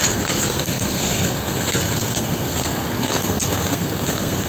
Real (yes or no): no